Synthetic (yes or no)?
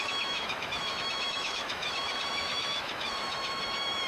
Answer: yes